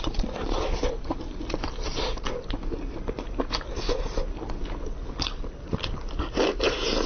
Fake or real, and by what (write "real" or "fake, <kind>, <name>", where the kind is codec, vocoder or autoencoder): real